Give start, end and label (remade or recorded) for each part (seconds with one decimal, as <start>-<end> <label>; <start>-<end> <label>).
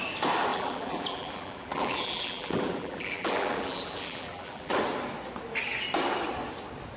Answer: 0.0-0.5 recorded; 0.5-4.7 remade; 4.7-7.0 recorded